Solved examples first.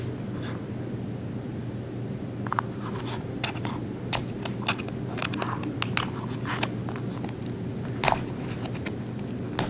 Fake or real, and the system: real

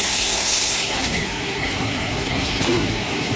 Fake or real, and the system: fake, codec, SNAC